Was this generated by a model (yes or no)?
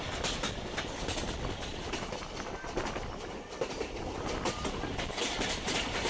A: no